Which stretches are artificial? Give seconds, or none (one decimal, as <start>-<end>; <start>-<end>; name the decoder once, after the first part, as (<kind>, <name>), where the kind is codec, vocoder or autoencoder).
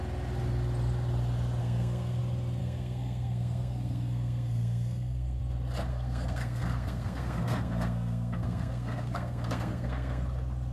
1.6-2.2 (codec, SNAC); 2.6-5.4; 5.9-10.2